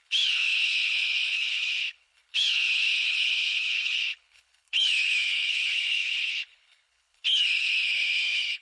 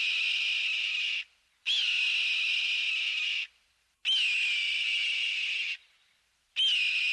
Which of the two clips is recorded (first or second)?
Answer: second